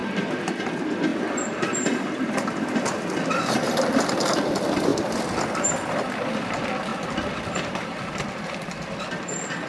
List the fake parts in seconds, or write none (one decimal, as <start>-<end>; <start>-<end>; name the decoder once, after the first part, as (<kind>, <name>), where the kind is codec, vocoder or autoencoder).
1.1-3.4 (vocoder, BigVGAN v2); 6.9-9.0